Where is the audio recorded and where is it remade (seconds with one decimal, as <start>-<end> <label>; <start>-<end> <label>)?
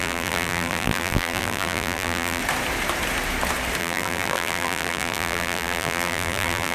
0.0-2.4 remade; 2.4-3.8 recorded; 3.8-6.7 remade